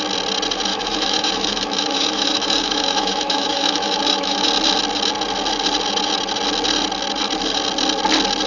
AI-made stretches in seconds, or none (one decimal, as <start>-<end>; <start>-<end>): 0.7-4.5